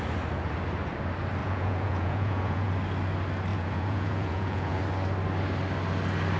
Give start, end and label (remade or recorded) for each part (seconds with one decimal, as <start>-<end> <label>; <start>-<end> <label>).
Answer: 0.0-1.4 recorded; 1.4-2.7 remade; 2.7-3.5 recorded; 3.5-4.8 remade; 4.8-6.4 recorded